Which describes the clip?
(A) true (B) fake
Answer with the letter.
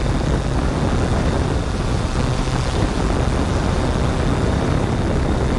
A